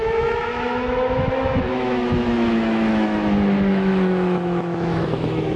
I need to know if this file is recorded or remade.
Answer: remade